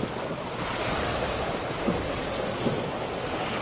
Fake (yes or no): no